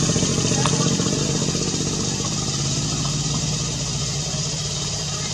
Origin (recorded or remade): recorded